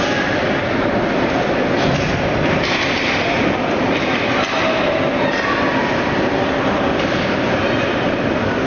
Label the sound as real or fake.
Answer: real